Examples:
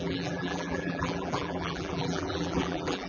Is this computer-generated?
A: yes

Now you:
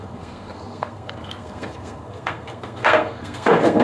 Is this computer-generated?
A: yes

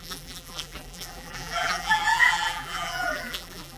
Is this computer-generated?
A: yes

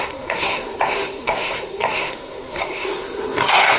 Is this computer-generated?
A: yes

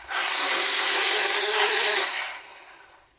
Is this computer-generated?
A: yes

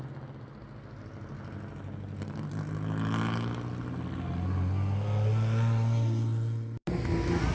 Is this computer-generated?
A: no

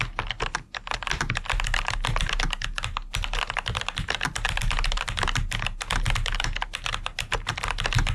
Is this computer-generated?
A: no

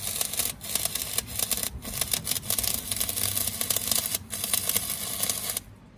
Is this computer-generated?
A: no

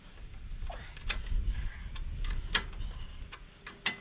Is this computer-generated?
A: no